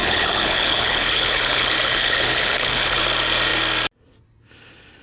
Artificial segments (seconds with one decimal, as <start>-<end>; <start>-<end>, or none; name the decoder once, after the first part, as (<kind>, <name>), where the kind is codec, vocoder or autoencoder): 0.0-3.0 (codec, HILCodec)